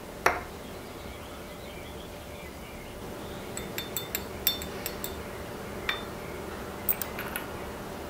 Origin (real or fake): real